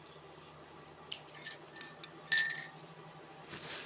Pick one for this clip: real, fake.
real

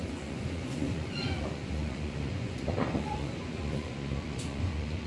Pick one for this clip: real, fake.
fake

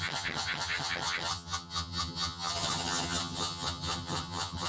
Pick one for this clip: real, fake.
fake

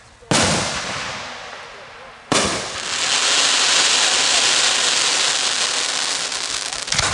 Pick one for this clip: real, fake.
real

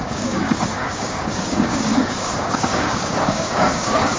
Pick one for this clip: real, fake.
fake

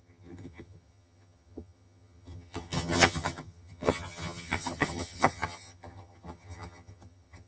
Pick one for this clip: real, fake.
fake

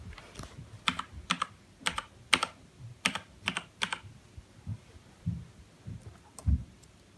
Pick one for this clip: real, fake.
real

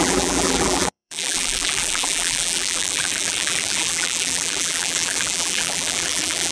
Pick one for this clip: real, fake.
fake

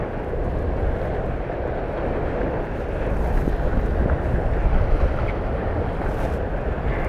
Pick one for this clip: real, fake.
real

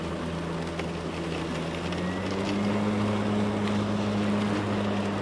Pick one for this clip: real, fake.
real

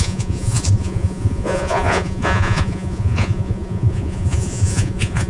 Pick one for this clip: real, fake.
fake